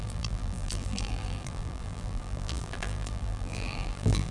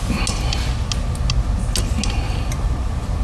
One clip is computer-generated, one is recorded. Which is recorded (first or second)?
second